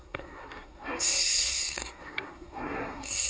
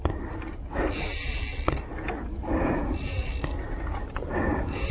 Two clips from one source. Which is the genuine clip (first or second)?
second